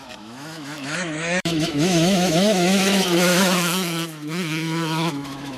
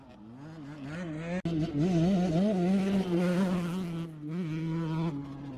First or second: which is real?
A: second